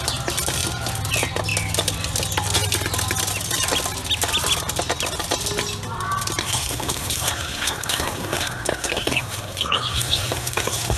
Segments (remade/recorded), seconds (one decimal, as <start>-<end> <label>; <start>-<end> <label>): 0.0-6.4 recorded; 6.4-11.0 remade